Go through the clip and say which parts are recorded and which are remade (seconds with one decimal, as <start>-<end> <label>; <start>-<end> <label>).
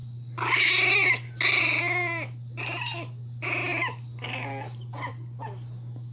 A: 0.0-6.1 recorded